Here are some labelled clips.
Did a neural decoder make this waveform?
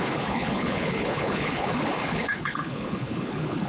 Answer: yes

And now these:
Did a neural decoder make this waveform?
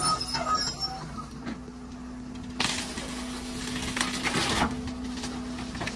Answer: no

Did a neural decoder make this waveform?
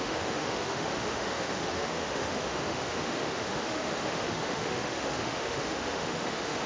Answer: yes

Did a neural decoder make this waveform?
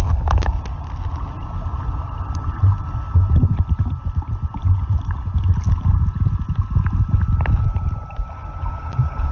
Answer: no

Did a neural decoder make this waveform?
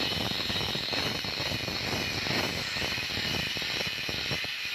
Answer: no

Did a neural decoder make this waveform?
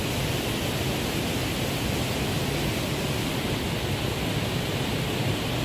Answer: no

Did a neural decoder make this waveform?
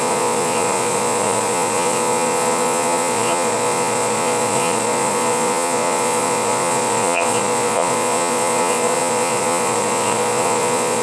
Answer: yes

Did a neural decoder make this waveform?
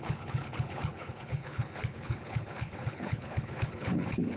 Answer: yes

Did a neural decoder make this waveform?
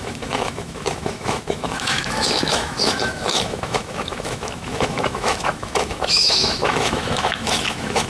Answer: yes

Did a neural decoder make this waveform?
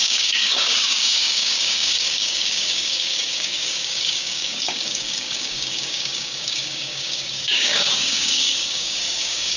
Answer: yes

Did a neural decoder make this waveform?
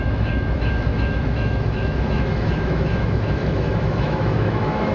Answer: yes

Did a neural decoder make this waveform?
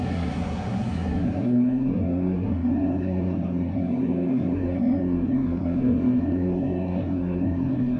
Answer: yes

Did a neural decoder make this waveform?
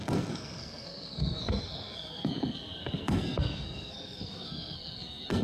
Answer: yes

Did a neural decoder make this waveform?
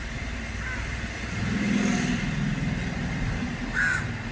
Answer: no